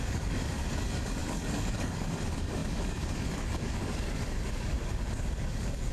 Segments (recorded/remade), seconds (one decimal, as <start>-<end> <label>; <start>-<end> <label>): 0.0-5.9 remade